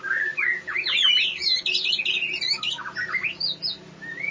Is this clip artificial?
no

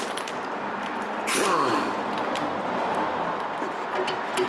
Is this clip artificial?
no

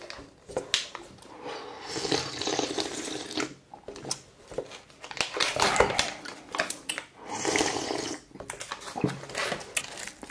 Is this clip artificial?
no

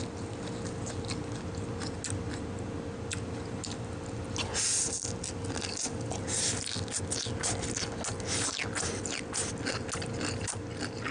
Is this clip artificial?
no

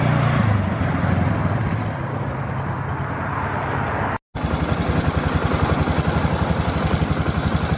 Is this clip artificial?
no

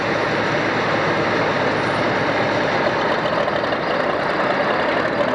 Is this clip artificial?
no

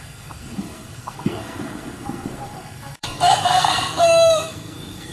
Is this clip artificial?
yes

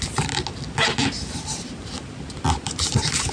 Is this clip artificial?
no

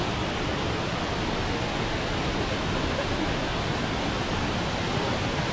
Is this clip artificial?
no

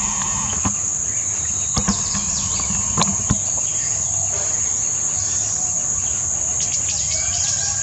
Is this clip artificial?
no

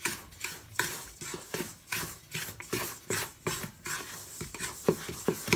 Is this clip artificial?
no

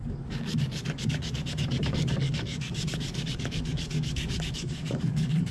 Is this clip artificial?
yes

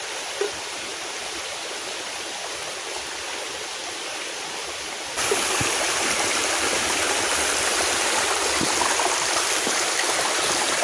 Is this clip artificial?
yes